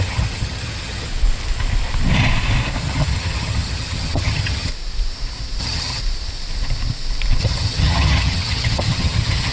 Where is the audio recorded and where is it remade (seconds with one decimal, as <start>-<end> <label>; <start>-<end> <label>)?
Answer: 0.0-1.1 remade; 1.1-2.8 recorded; 2.8-4.7 remade; 4.7-5.6 recorded; 5.6-6.0 remade; 6.0-7.4 recorded; 7.4-9.5 remade